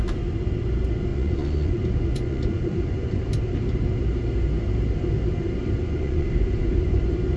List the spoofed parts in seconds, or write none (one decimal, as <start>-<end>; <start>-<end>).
1.1-3.2; 5.8-7.0